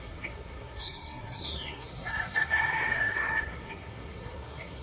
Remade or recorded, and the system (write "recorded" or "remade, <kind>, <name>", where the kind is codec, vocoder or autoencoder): remade, codec, SNAC